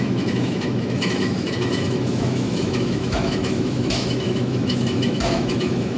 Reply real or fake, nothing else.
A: fake